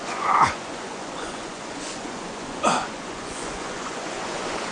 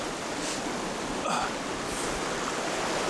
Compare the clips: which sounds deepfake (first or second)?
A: first